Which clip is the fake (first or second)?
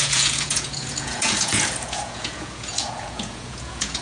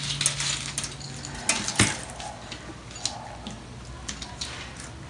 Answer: first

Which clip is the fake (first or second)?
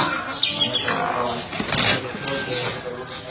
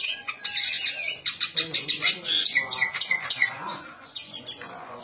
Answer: second